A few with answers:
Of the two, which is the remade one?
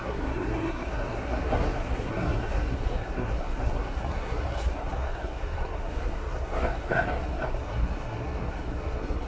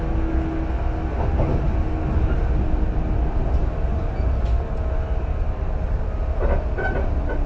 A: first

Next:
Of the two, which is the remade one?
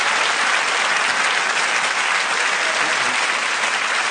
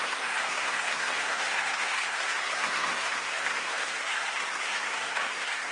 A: second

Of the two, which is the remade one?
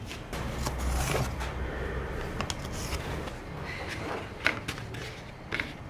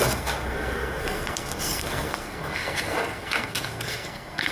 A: second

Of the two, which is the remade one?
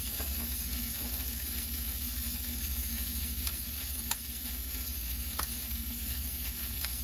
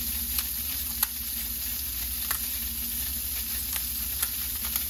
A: first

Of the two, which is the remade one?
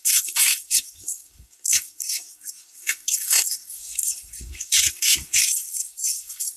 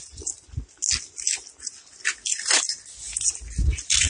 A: first